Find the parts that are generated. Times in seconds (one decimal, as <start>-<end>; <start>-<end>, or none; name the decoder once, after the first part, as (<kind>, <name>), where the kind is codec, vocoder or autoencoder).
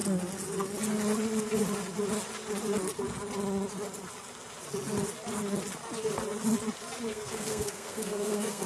7.1-8.7 (codec, SNAC)